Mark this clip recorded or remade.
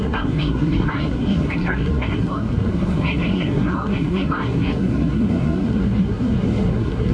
remade